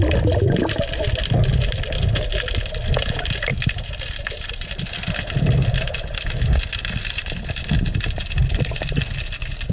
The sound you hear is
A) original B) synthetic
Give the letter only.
A